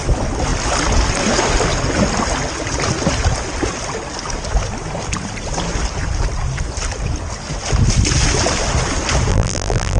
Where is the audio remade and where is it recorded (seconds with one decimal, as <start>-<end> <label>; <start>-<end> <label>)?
0.0-9.3 recorded; 9.3-10.0 remade